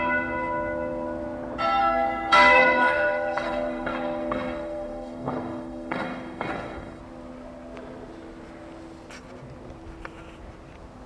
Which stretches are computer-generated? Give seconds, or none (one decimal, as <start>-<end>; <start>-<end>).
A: 1.8-7.0